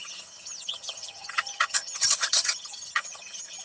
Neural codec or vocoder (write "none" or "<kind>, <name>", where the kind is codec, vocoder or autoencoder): vocoder, HiFi-GAN